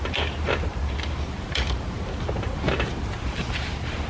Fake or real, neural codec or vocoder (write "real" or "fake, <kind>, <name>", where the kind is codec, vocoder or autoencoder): real